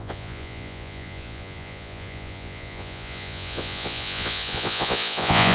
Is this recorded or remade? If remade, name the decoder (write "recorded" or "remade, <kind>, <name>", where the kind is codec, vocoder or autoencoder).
remade, vocoder, Vocos